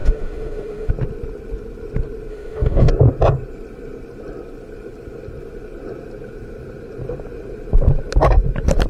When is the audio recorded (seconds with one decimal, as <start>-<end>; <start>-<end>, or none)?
0.9-2.3; 2.9-8.9